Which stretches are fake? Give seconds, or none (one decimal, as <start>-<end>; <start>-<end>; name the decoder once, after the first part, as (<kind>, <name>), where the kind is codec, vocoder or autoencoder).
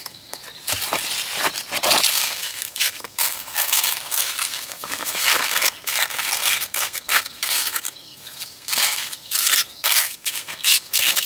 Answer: 0.0-0.4 (codec, SNAC); 2.1-11.3